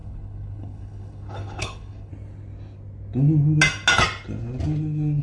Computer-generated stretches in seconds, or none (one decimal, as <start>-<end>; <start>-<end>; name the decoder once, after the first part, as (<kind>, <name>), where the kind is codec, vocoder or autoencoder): 0.0-2.1 (codec, HILCodec)